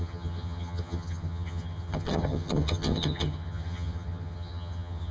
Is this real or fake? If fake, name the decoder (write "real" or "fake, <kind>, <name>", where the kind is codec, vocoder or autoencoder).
fake, vocoder, HiFi-GAN